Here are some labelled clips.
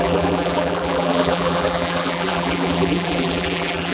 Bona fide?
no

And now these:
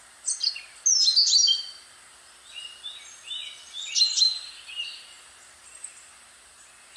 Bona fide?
yes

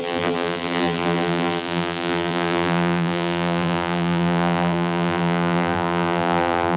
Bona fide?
no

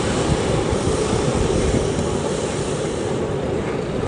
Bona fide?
no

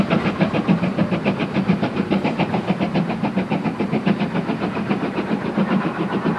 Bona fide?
yes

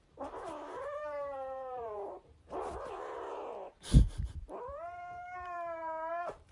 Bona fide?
no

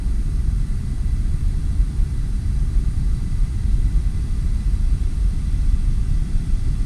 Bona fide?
no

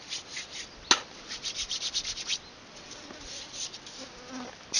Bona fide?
yes